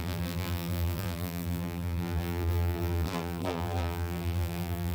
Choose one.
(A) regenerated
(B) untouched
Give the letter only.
A